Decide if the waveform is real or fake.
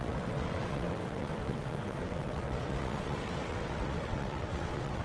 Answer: fake